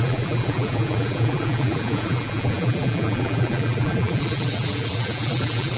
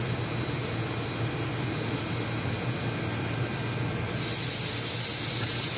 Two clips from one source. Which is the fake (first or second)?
first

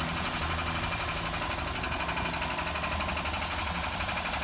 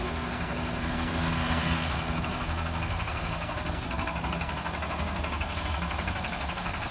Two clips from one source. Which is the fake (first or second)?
second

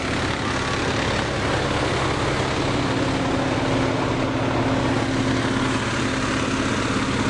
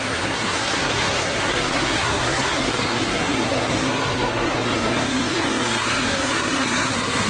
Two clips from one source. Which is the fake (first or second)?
second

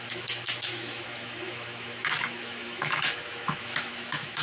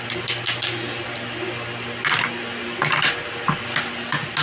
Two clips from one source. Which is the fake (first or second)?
first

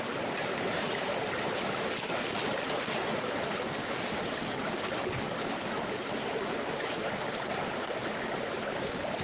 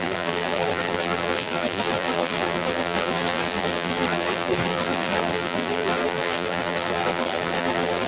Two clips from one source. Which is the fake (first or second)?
second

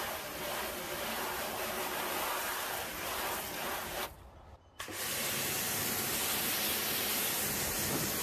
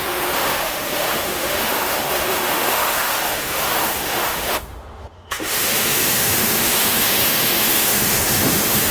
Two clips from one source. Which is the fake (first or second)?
second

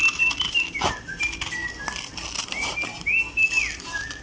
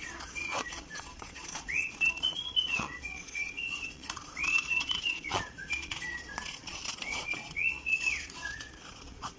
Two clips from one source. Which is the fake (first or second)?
second